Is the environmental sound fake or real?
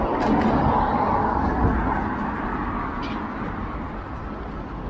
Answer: real